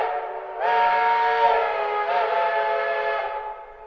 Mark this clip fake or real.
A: real